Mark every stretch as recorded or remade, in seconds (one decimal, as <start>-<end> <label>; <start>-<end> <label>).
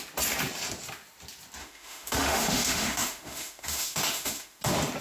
0.0-1.6 recorded; 1.6-4.6 remade; 4.6-5.0 recorded